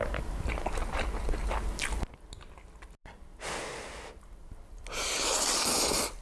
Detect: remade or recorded recorded